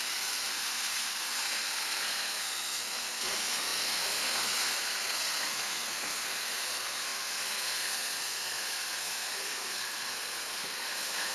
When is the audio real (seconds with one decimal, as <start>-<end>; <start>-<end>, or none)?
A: none